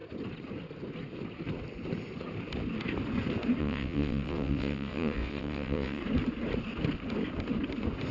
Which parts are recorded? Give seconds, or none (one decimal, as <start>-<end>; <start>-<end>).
0.0-3.6; 6.0-8.1